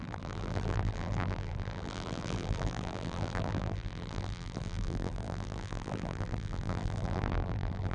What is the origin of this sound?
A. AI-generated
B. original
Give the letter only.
A